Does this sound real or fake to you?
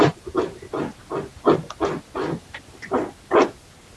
real